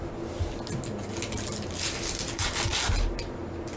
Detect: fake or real real